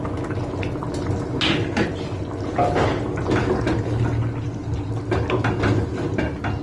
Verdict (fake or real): real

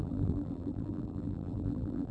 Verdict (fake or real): fake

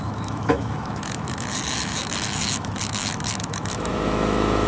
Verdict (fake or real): fake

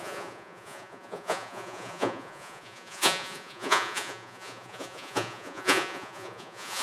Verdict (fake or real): fake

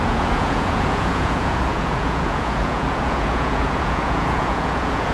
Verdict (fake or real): fake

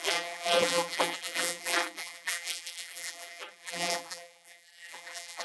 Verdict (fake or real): fake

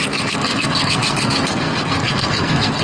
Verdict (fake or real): fake